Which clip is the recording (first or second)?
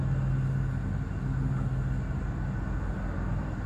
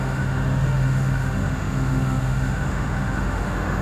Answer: first